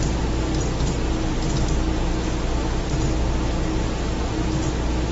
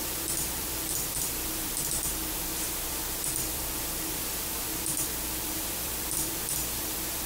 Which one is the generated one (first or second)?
second